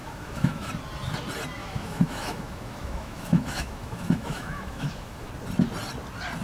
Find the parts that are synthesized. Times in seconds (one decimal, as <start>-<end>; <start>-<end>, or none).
0.0-0.7; 1.6-5.3